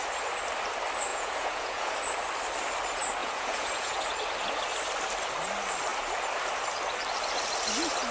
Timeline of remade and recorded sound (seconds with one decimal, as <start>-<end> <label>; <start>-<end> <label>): 0.0-1.1 recorded; 1.1-1.9 remade; 1.9-3.2 recorded; 3.2-4.0 remade; 4.0-8.1 recorded